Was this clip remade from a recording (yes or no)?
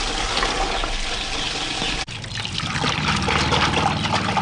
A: no